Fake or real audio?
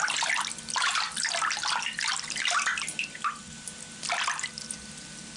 real